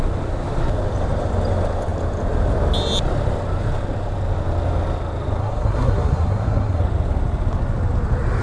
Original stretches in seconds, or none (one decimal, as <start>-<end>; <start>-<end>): 0.0-5.4; 6.8-8.4